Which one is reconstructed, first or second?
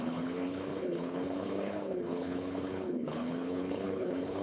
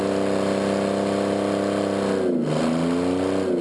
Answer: first